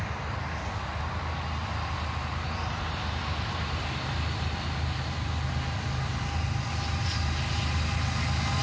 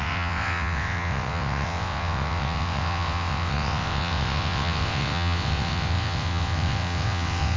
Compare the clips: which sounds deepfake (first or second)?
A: second